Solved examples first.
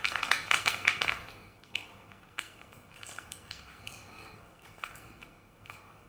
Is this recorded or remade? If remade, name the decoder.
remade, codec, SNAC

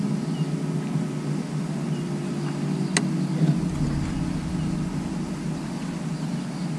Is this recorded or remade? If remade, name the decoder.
recorded